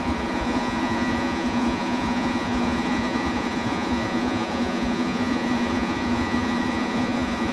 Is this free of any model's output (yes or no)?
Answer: no